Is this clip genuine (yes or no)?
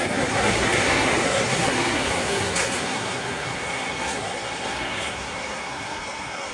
no